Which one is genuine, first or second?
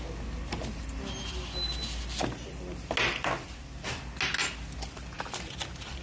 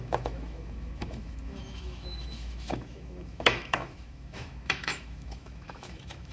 first